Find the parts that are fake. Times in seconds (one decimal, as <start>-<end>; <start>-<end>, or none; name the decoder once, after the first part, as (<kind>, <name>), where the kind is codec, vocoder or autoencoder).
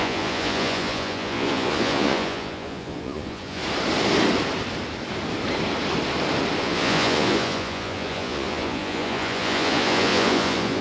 0.0-3.6 (vocoder, Vocos); 6.6-10.8